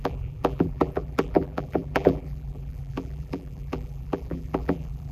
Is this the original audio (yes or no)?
no